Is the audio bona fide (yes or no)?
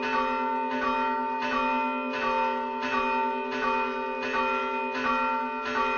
yes